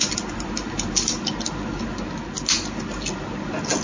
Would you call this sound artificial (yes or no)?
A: no